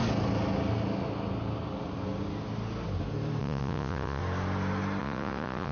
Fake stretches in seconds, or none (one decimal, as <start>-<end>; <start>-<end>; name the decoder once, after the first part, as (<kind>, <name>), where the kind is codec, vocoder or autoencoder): 3.4-4.2 (vocoder, Vocos); 5.0-5.7